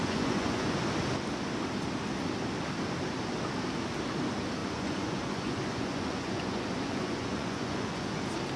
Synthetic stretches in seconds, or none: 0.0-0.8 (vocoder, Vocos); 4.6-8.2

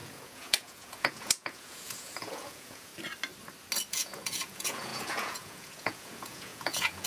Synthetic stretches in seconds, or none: 0.0-2.9 (vocoder, Vocos); 3.9-7.1

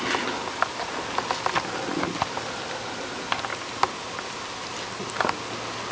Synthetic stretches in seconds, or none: none